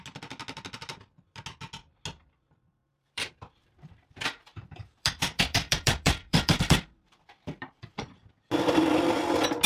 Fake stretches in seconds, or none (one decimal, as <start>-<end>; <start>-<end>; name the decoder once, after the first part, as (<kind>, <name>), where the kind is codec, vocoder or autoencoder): 2.8-3.3 (vocoder, BigVGAN v2); 4.5-8.3